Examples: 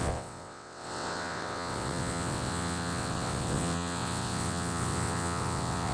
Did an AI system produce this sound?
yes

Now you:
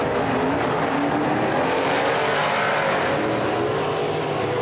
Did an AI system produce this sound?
no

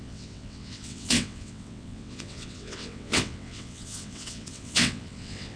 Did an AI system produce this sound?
yes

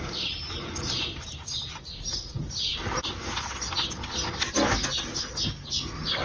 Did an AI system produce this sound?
no